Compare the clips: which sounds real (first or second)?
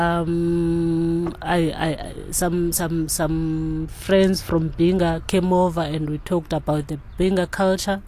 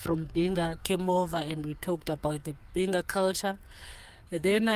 first